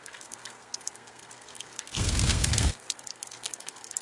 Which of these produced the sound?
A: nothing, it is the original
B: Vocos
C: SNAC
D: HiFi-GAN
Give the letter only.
C